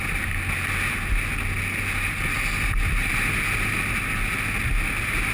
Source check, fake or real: real